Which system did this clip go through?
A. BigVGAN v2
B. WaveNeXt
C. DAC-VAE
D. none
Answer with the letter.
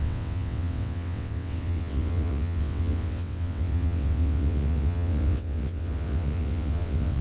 B